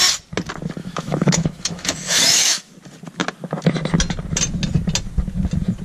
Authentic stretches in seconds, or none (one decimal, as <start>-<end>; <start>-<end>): 0.0-0.8; 2.7-5.8